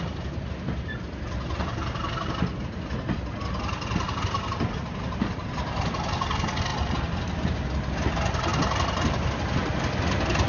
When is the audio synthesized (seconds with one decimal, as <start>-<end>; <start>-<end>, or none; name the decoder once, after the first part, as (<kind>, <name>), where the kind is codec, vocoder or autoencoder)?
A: none